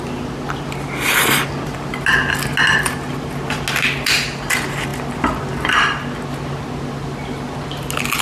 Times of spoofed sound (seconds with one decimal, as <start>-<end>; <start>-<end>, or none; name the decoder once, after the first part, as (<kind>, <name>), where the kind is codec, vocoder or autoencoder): none